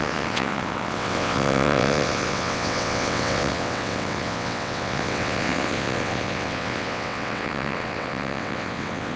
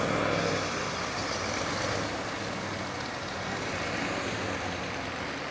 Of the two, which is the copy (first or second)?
first